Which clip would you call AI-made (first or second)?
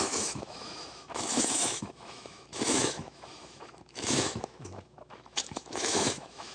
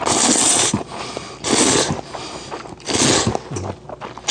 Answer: first